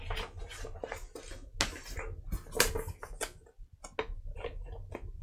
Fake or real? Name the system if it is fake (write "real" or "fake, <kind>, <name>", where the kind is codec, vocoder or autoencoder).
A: real